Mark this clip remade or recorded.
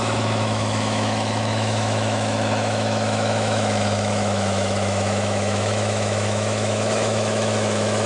remade